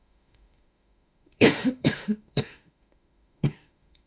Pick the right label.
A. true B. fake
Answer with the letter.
B